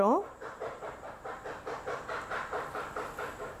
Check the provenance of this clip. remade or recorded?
recorded